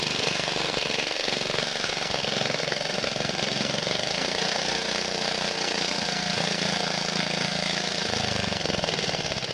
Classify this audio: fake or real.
fake